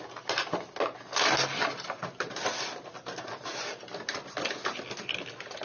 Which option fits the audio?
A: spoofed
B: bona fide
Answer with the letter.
B